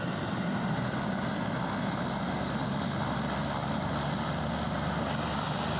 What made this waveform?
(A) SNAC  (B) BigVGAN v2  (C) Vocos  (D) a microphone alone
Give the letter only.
D